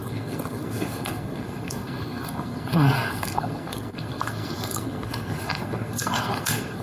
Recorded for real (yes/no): no